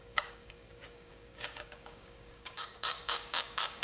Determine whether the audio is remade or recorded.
remade